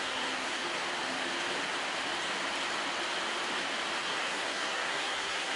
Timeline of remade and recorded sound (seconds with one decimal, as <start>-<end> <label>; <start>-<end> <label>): 0.0-0.6 remade; 0.6-4.0 recorded; 4.0-5.6 remade